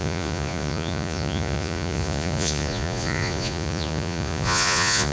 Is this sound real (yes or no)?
no